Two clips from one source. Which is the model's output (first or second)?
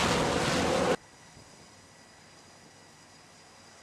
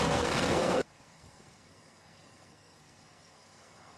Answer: second